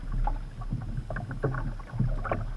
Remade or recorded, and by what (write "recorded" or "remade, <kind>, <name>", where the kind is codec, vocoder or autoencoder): recorded